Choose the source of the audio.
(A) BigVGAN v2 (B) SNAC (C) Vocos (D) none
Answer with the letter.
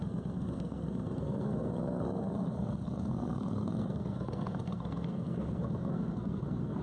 B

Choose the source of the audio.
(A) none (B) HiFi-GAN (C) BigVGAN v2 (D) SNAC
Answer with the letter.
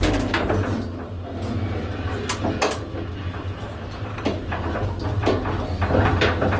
A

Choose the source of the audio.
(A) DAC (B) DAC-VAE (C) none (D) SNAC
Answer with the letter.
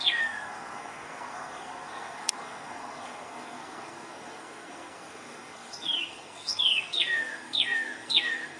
D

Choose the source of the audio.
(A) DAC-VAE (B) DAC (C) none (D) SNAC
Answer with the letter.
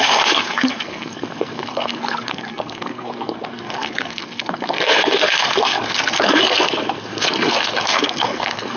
D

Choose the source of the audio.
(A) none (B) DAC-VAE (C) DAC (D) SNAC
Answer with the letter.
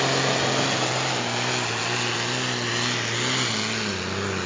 A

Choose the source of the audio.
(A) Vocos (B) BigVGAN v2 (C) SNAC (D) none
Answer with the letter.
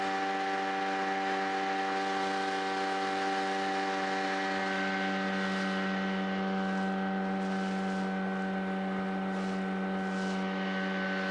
D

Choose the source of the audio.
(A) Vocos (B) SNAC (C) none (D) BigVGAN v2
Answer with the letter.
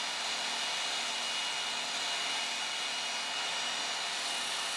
C